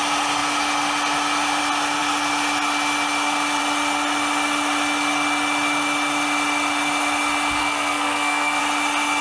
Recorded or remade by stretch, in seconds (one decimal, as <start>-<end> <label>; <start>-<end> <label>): 0.0-7.6 recorded; 7.6-8.6 remade; 8.6-9.2 recorded